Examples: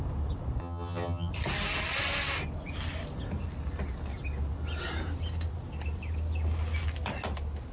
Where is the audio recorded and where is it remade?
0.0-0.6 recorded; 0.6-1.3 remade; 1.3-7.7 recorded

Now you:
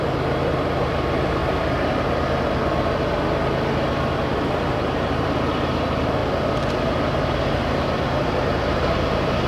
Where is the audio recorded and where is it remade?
0.0-1.4 remade; 1.4-4.5 recorded; 4.5-6.2 remade; 6.2-7.5 recorded; 7.5-9.5 remade

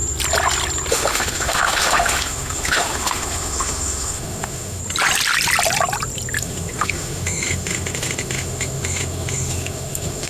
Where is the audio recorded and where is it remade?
0.0-0.9 recorded; 0.9-4.8 remade; 4.8-6.4 recorded; 6.4-10.3 remade

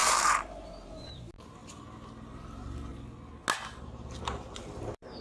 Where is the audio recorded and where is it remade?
0.0-1.6 remade; 1.6-2.3 recorded; 2.3-2.9 remade; 2.9-3.8 recorded; 3.8-5.2 remade